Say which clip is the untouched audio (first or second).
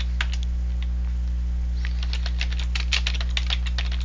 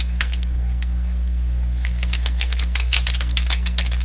first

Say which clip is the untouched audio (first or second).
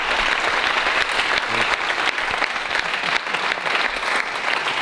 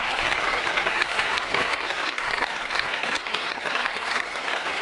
first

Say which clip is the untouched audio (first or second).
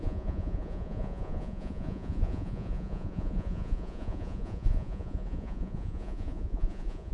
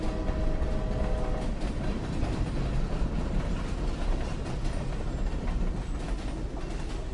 second